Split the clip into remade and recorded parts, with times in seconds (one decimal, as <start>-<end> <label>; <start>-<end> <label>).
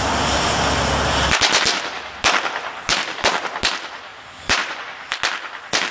0.0-4.1 recorded; 4.1-4.8 remade; 4.8-5.9 recorded